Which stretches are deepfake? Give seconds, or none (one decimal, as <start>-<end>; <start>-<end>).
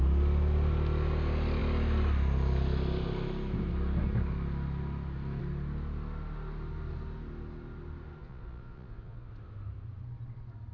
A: 8.2-9.3